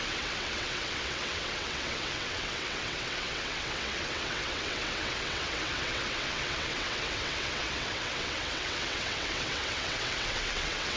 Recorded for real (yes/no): no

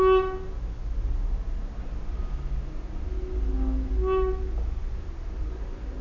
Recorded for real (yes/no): yes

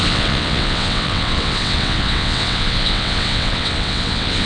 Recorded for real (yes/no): no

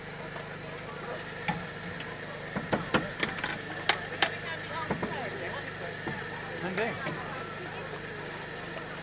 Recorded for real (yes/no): yes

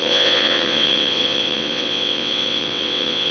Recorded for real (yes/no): no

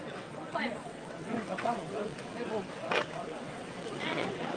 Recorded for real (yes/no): no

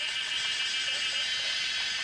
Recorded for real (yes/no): yes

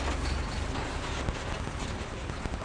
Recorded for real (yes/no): yes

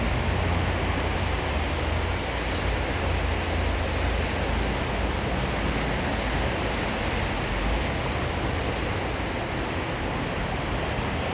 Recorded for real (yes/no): yes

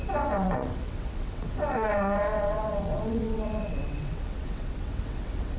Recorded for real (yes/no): no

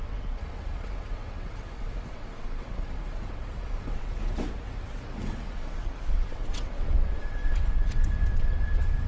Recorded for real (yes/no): no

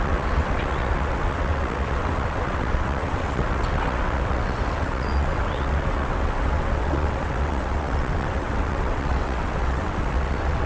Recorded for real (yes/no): no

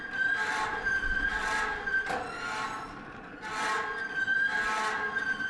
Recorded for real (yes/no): yes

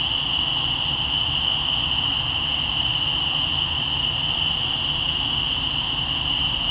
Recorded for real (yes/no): yes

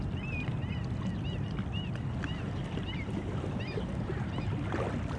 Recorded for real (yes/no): yes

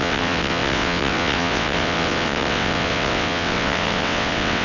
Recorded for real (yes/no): no